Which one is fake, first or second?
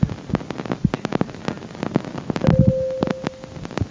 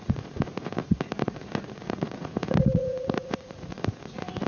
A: second